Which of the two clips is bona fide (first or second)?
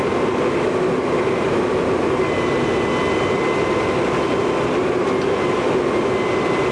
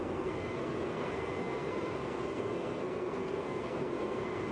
first